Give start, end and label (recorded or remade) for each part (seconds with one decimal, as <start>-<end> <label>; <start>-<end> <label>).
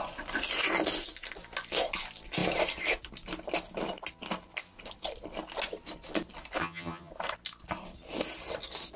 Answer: 0.0-6.6 recorded; 6.6-7.1 remade; 7.1-9.0 recorded